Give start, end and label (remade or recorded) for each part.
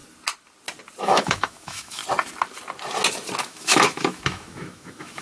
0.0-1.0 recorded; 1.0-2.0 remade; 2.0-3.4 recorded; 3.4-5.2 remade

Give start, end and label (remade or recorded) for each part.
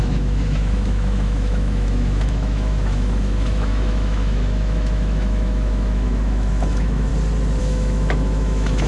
0.0-7.1 remade; 7.1-7.6 recorded; 7.6-8.9 remade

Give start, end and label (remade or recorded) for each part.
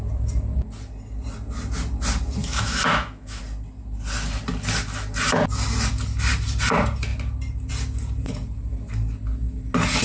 0.0-2.4 recorded; 2.4-3.4 remade; 3.4-10.0 recorded